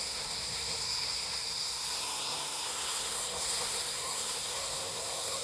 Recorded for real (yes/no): no